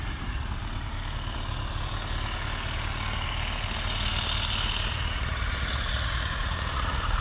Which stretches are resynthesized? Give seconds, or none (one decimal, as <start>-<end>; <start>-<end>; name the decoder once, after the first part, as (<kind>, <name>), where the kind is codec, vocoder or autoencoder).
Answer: 0.0-0.6 (vocoder, Vocos); 4.9-7.2